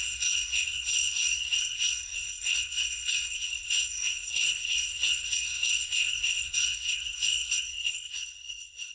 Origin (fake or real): fake